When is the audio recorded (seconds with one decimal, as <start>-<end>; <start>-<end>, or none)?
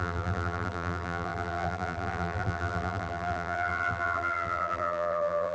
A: none